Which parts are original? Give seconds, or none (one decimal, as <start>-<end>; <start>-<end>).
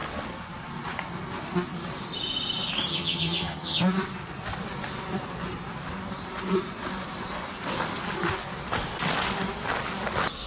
0.0-2.9; 3.8-10.5